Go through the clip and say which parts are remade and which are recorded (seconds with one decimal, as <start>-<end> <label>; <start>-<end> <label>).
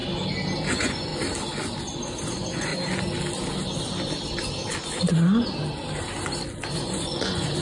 0.0-0.7 recorded; 0.7-1.1 remade; 1.1-2.3 recorded; 2.3-2.7 remade; 2.7-6.7 recorded; 6.7-7.6 remade